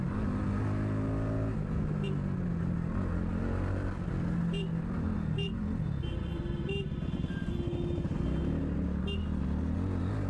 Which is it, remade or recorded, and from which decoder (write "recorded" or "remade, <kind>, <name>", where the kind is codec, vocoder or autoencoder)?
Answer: recorded